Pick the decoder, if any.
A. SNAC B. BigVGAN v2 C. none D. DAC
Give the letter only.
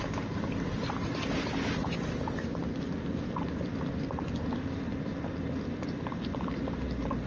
C